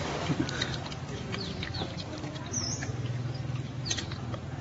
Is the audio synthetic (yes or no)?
yes